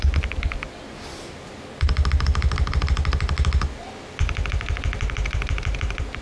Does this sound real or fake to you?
real